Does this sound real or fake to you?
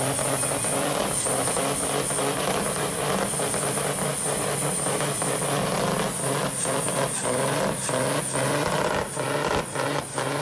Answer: real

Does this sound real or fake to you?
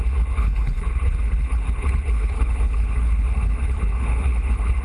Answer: fake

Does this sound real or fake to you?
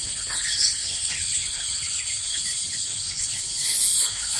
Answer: fake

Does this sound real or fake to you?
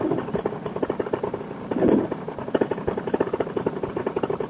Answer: real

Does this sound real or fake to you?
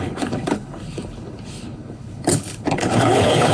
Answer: fake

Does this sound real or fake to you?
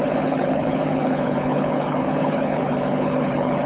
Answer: fake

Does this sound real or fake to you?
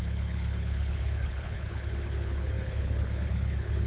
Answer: fake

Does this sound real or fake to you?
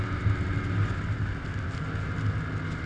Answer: real